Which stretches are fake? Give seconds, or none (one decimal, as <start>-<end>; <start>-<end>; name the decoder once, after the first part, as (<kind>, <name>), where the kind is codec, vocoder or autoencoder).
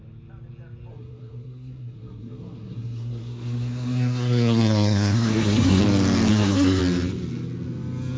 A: 0.9-5.8 (codec, SNAC); 6.3-6.8